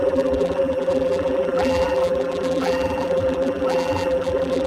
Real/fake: fake